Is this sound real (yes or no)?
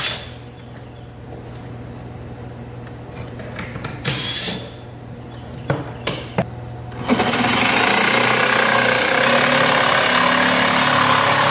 yes